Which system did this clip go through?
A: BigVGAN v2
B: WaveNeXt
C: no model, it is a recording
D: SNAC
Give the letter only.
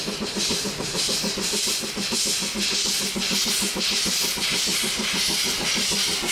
C